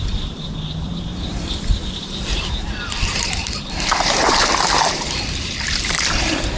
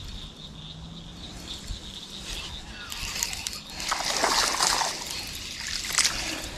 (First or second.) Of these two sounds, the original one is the second